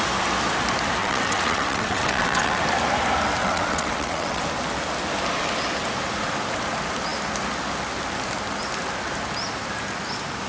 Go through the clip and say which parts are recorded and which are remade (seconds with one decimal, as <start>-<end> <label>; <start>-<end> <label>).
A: 0.0-1.0 recorded; 1.0-2.6 remade; 2.6-3.4 recorded; 3.4-4.4 remade; 4.4-10.5 recorded